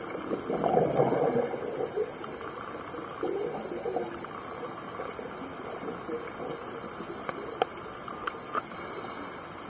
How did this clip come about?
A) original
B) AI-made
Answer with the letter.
A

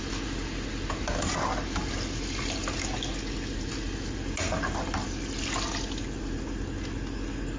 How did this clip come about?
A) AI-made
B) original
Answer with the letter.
B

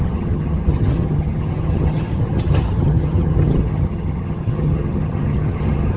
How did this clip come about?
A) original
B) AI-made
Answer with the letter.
B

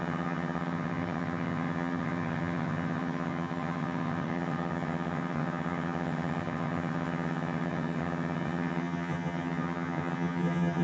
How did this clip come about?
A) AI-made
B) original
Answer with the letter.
A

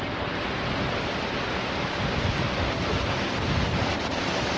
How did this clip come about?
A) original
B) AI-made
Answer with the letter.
A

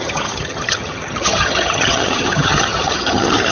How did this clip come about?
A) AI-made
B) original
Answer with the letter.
A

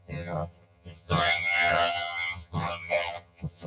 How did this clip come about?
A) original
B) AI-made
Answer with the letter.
B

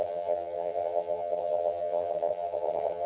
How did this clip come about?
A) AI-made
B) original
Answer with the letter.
A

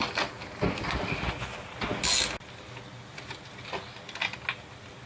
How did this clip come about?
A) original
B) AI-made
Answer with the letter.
A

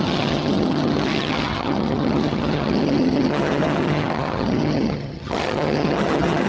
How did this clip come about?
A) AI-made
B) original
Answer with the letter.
A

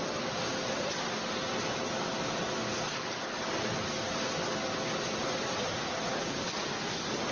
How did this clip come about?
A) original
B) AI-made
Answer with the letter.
A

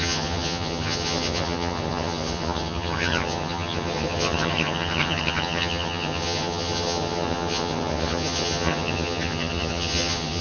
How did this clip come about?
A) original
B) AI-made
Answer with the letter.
B